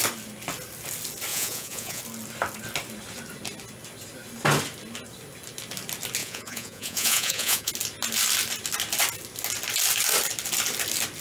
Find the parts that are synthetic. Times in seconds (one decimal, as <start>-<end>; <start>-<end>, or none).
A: 1.3-2.0; 6.2-7.7